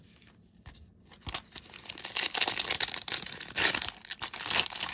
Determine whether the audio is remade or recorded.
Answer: recorded